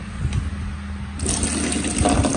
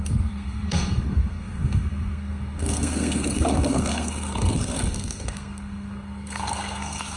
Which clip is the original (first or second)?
first